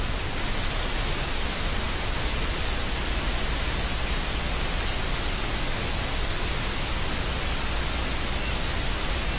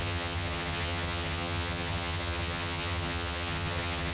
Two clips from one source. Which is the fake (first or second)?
second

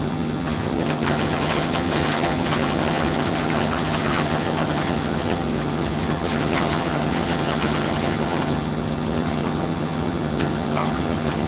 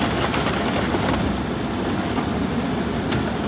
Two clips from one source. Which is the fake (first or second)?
first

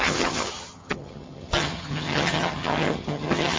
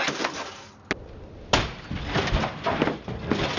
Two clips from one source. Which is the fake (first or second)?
first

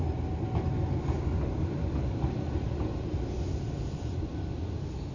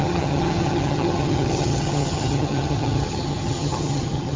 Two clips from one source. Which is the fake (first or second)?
second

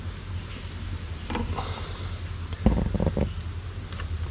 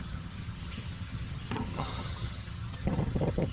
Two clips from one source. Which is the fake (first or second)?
second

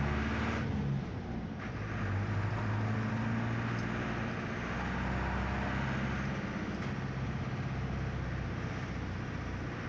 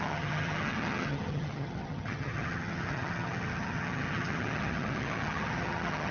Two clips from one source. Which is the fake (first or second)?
second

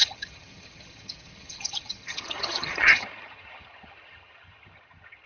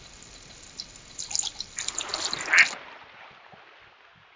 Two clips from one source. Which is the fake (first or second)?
first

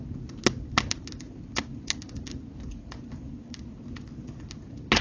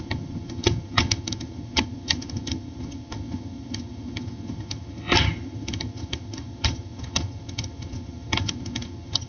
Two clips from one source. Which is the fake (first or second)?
second